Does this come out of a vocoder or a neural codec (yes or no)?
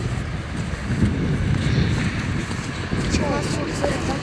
no